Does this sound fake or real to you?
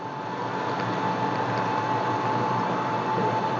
real